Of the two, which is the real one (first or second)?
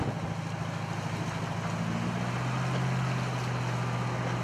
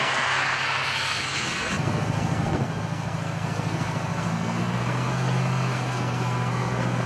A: first